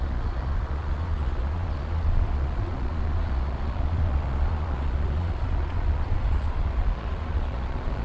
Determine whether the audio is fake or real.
fake